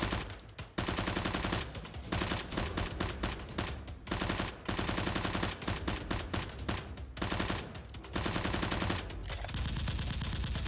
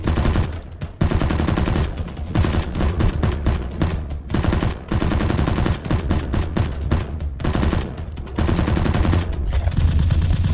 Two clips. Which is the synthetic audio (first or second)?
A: second